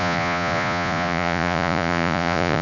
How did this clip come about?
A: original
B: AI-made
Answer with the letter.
B